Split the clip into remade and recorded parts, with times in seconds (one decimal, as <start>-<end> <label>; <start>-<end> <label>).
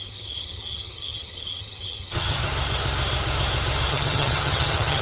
0.0-2.5 remade; 2.5-3.9 recorded; 3.9-5.0 remade